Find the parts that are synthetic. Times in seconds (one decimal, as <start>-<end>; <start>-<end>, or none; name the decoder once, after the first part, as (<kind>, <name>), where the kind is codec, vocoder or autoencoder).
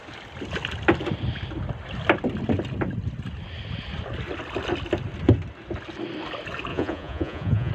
6.7-7.7 (vocoder, Vocos)